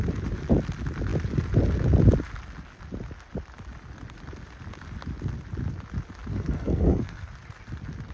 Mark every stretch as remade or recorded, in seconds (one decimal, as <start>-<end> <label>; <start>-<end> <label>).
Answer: 0.0-6.3 recorded; 6.3-7.3 remade; 7.3-8.1 recorded